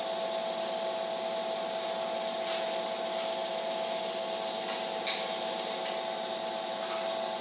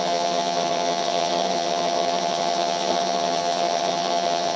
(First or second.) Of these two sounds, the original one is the first